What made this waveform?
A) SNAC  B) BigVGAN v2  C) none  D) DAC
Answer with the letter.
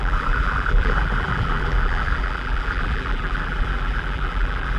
B